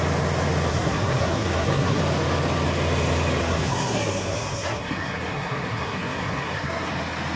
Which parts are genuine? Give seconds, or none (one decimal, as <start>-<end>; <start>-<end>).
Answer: 0.0-0.7; 2.0-3.4; 6.9-7.4